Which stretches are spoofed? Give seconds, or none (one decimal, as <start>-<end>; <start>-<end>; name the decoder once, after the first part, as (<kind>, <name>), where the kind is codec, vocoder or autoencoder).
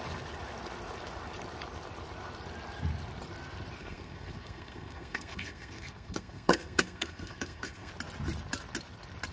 3.8-7.9 (codec, SNAC)